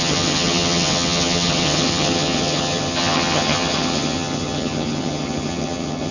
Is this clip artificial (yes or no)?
yes